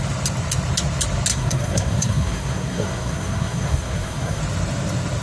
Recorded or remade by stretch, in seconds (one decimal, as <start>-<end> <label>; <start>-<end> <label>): 0.0-1.3 recorded; 1.3-4.4 remade; 4.4-5.2 recorded